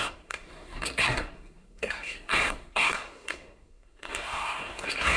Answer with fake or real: fake